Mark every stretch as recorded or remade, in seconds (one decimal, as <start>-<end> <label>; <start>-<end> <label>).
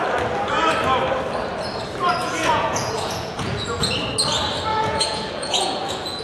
0.0-2.2 recorded; 2.2-3.9 remade; 3.9-4.7 recorded; 4.7-6.2 remade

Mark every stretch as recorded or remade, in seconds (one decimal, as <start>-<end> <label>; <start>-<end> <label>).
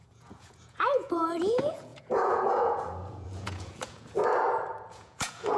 0.0-4.2 remade; 4.2-4.9 recorded; 4.9-5.6 remade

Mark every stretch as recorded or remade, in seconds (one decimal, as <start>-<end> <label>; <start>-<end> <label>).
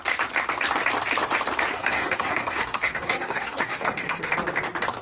0.0-1.7 recorded; 1.7-4.3 remade; 4.3-5.0 recorded